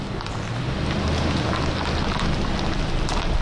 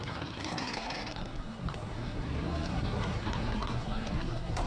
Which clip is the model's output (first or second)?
second